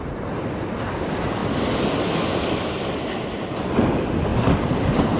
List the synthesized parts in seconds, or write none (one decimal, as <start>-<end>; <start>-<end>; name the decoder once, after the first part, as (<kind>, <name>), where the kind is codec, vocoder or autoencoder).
none